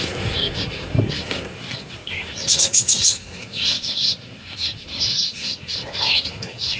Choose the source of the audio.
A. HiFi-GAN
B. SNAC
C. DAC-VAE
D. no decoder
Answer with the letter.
B